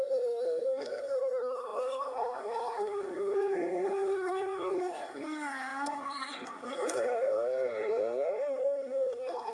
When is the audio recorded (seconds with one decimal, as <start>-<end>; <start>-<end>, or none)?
none